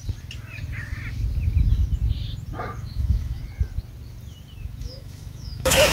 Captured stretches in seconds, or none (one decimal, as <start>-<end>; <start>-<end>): 0.0-2.8; 3.4-4.8